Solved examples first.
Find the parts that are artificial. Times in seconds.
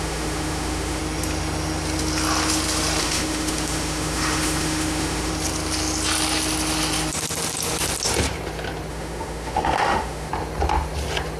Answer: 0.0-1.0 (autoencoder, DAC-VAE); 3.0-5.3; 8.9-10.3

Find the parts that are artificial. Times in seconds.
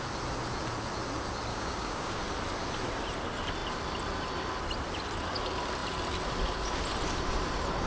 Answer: 1.5-2.2 (codec, DAC)